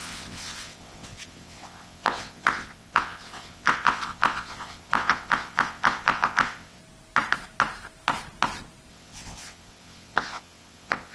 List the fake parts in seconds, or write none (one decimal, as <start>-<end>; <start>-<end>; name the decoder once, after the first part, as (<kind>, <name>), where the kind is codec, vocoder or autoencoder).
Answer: 0.0-6.8 (vocoder, WaveNeXt); 8.9-11.1